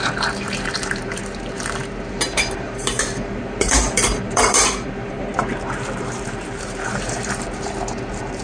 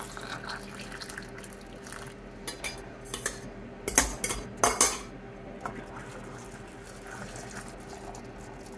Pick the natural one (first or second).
second